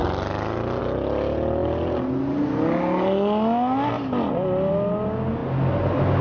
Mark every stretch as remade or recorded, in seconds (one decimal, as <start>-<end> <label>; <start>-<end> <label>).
0.0-6.2 recorded